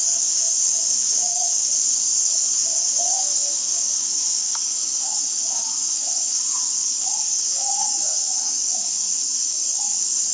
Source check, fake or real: fake